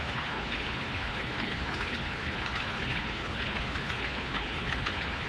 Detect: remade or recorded remade